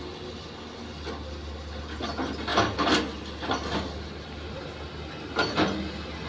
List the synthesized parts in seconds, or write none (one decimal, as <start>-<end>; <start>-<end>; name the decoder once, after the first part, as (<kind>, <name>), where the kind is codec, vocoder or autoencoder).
none